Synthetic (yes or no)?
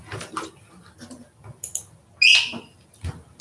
no